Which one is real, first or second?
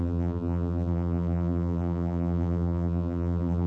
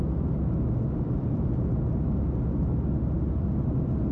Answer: second